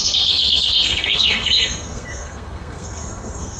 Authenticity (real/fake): fake